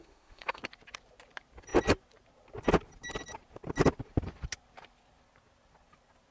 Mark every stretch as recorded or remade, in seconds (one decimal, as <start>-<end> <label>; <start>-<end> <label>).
0.0-0.6 remade; 0.6-6.3 recorded